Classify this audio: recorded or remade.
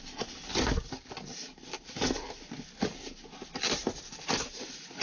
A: recorded